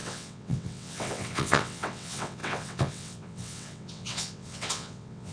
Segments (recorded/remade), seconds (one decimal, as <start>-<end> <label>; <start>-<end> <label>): 0.0-5.3 remade